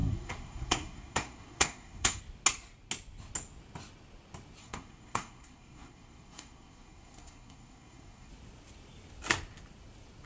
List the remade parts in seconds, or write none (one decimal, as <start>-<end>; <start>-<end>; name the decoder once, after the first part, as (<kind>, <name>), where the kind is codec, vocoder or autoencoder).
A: 0.0-2.2 (codec, SNAC); 4.6-8.3